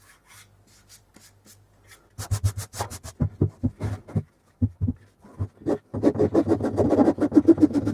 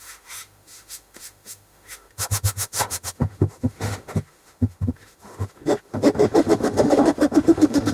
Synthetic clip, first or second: second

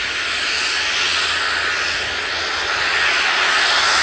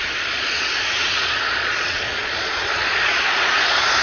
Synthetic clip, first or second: second